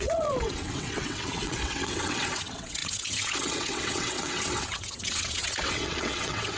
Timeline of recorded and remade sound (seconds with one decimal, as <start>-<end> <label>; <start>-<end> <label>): 0.0-6.6 remade